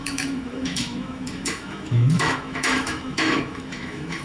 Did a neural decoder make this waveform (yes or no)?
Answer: yes